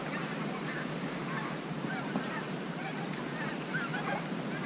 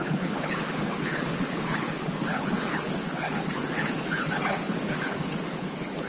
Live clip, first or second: first